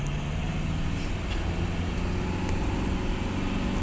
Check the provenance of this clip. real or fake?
real